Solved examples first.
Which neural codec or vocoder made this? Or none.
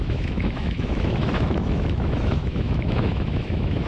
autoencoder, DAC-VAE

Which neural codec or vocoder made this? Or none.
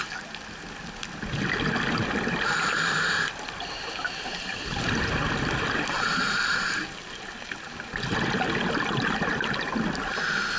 none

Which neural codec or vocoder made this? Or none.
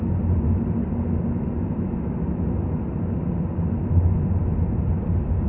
none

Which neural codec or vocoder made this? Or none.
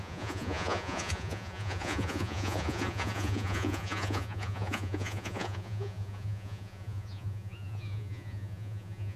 vocoder, Vocos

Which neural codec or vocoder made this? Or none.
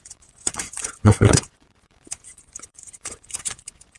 vocoder, Vocos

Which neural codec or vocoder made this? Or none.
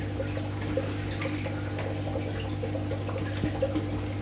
none